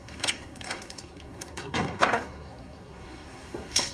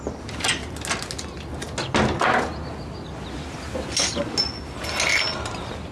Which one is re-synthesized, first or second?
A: first